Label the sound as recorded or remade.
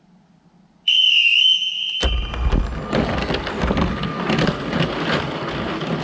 recorded